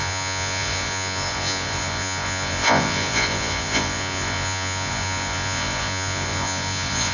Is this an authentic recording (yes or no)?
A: no